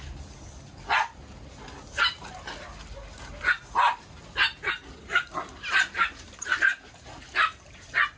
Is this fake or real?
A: real